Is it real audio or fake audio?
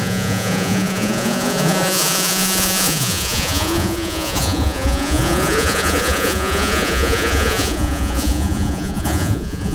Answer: fake